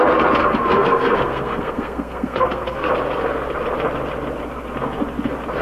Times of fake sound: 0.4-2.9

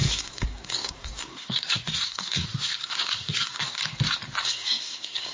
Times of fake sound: 0.0-3.8; 4.4-5.3

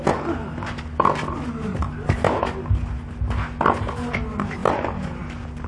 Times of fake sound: none

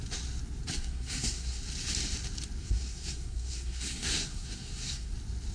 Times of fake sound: 0.8-1.6; 2.6-5.1